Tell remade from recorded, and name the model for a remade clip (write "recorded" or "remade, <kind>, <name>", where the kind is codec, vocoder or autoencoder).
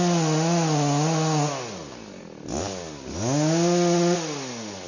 recorded